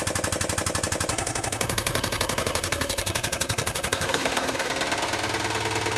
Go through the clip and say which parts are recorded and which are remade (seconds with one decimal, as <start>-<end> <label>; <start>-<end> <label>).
0.0-1.1 recorded; 1.1-4.7 remade; 4.7-6.0 recorded